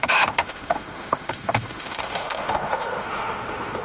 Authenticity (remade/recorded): remade